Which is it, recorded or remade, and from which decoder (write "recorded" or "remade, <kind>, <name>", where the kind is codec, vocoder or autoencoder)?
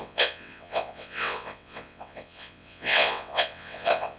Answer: remade, vocoder, WaveNeXt